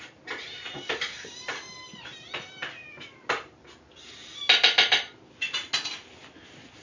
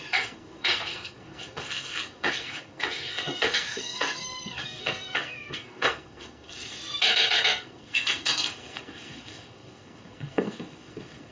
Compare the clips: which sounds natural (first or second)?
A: first